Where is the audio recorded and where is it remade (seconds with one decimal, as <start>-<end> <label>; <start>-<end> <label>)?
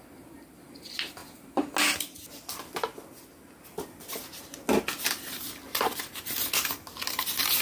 0.0-7.6 recorded